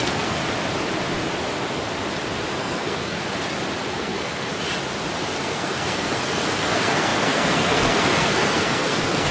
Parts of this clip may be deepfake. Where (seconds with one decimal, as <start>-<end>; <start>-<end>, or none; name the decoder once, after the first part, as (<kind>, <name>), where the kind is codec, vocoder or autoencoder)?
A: 0.0-0.4 (codec, SNAC); 2.6-3.2; 3.9-4.5; 5.4-9.3